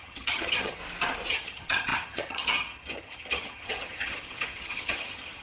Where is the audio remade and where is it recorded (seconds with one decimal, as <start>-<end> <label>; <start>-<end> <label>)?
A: 0.0-0.8 remade; 0.8-1.3 recorded; 1.3-5.4 remade